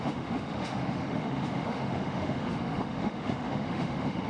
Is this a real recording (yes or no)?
no